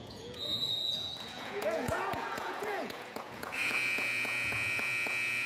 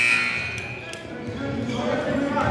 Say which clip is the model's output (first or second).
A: first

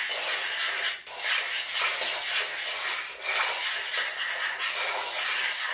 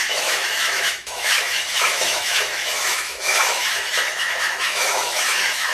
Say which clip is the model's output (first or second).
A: second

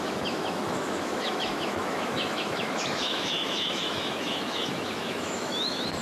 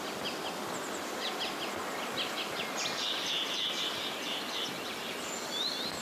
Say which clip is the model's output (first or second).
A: first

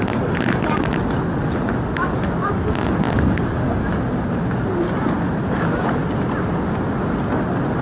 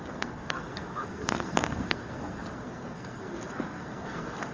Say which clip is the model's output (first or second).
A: second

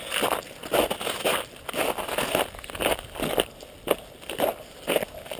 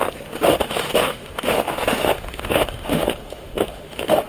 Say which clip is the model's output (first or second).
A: second